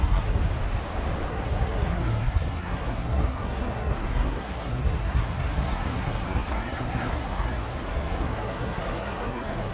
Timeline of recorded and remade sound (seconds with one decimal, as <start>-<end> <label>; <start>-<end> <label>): 0.0-0.4 remade; 0.4-1.3 recorded; 1.3-9.7 remade